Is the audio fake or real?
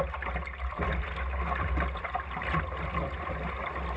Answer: real